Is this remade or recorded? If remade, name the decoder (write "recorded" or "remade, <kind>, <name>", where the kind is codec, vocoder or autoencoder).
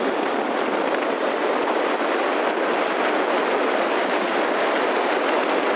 recorded